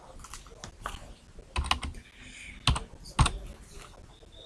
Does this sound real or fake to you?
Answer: real